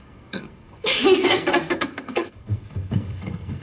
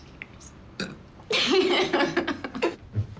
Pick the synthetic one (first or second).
first